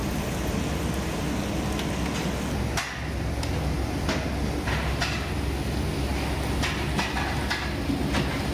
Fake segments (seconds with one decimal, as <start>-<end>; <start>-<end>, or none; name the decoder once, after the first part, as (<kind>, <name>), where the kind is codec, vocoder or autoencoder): none